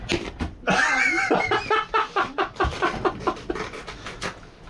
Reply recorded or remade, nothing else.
recorded